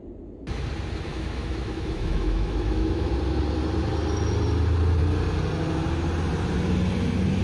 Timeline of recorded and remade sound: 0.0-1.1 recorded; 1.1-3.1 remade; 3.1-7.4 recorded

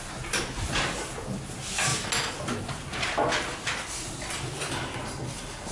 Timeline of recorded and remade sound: 0.0-5.7 recorded

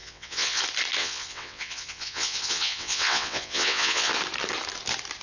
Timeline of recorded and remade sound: 0.0-0.6 remade; 0.6-1.0 recorded; 1.0-4.1 remade; 4.1-5.2 recorded

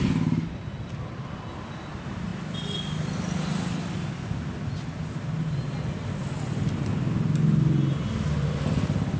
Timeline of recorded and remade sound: 0.0-9.2 recorded

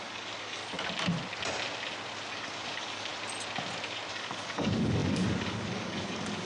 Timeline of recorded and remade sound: 0.0-0.6 remade; 0.6-2.3 recorded; 2.3-3.1 remade; 3.1-4.1 recorded; 4.1-6.4 remade